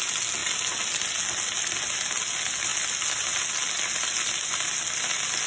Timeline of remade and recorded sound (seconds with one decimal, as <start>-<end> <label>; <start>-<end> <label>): 0.0-5.5 recorded